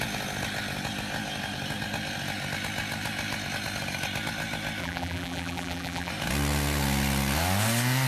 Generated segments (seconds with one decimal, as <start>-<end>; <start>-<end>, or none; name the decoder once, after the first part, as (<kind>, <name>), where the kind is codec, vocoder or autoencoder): 4.8-6.1 (vocoder, BigVGAN v2)